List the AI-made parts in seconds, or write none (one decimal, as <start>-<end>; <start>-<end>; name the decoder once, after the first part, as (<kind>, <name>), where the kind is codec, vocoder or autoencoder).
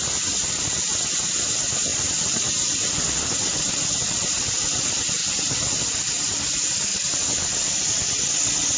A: 1.9-3.7 (vocoder, BigVGAN v2); 5.2-6.1; 6.9-7.8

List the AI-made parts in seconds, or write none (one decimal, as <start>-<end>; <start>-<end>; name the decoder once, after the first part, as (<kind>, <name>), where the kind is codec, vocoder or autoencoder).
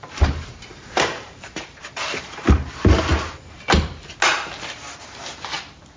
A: 0.0-2.1 (vocoder, BigVGAN v2)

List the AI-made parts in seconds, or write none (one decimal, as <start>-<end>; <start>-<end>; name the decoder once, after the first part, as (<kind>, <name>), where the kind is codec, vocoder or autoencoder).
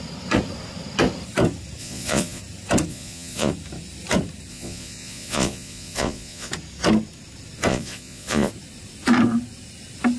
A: 1.8-2.4 (vocoder, Vocos); 2.9-3.5; 4.5-6.5; 7.7-8.5